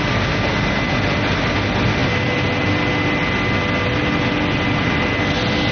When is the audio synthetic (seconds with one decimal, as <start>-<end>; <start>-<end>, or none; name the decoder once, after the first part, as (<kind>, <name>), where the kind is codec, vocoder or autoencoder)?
none